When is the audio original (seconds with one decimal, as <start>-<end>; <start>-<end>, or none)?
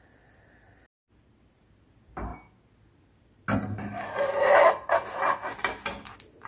0.0-6.5